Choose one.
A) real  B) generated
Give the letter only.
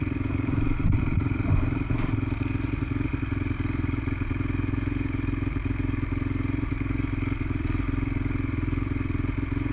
B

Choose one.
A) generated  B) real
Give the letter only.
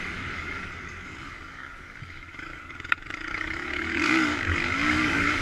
A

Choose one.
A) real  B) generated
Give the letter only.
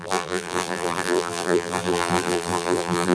B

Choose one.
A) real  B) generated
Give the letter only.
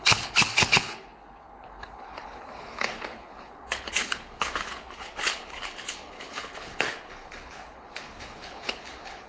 B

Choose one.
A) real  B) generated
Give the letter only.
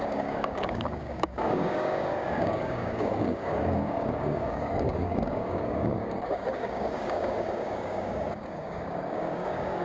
B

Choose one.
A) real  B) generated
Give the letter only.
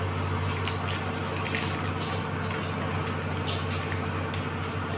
A